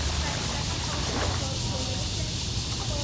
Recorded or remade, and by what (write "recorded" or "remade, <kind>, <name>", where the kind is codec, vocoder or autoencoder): recorded